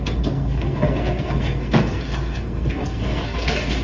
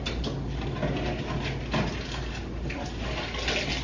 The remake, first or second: first